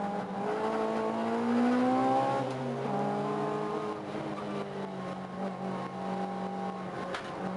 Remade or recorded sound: recorded